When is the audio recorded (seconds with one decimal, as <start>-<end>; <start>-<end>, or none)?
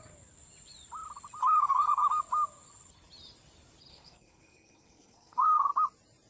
0.0-1.4; 2.2-3.9; 5.7-6.3